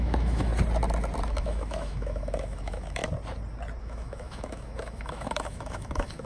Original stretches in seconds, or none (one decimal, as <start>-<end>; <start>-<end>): 0.5-1.3; 3.0-3.8